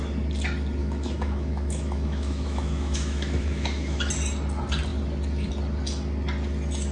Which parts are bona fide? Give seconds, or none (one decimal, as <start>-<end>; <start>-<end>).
0.0-0.8; 4.1-6.9

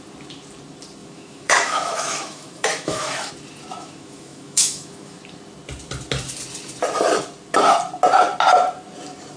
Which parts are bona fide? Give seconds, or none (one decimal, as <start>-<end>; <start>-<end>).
0.0-1.0; 3.3-3.7; 5.2-9.4

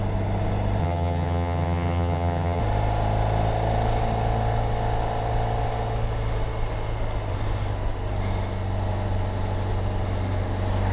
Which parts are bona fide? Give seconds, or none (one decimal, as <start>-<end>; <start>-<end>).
0.0-0.8; 2.6-10.9

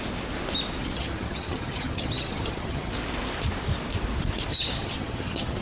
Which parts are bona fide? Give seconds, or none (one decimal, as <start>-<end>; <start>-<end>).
0.0-0.8; 2.9-4.5

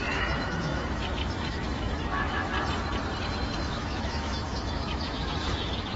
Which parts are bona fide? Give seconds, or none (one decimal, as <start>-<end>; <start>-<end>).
2.5-3.3

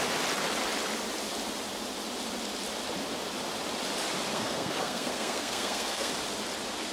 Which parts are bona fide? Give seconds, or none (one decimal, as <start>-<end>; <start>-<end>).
0.0-4.3; 6.1-6.9

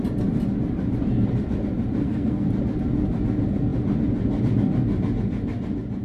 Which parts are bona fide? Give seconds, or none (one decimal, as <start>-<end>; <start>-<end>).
0.0-2.0; 2.5-6.0